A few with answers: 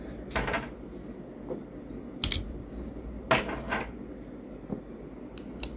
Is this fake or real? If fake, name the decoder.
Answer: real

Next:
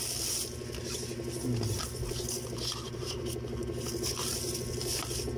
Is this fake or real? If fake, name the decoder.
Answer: real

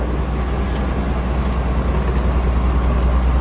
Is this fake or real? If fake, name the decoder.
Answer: real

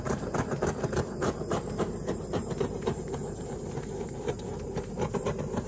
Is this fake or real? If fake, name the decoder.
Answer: fake, vocoder, BigVGAN v2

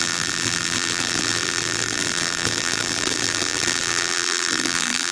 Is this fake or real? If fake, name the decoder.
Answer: fake, vocoder, BigVGAN v2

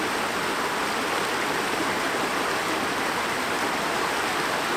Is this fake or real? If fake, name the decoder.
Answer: real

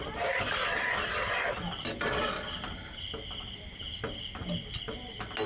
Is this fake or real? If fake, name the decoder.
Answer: real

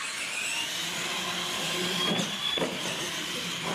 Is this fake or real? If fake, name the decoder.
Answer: real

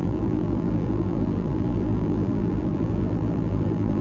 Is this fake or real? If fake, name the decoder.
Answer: fake, vocoder, BigVGAN v2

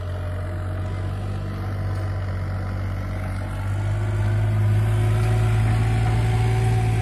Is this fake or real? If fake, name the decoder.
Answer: real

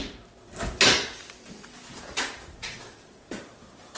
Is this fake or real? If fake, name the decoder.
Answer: fake, vocoder, BigVGAN v2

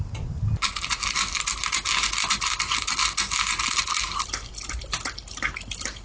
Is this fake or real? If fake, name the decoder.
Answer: real